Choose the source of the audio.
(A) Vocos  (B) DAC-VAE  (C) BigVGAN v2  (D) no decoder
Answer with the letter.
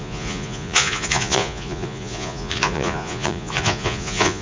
A